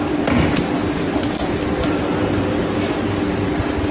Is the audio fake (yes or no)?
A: no